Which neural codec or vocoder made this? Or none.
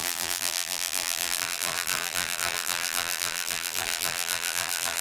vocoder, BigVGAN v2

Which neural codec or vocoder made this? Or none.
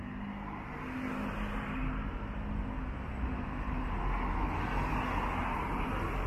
none